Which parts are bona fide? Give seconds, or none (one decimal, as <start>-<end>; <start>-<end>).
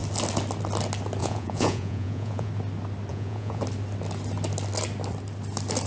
0.0-1.2; 2.5-3.1; 3.6-5.9